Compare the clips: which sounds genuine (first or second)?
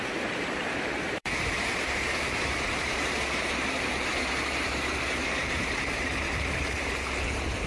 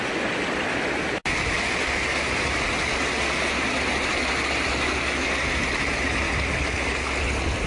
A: second